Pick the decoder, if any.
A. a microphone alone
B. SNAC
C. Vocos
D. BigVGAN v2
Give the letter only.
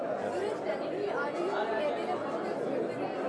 A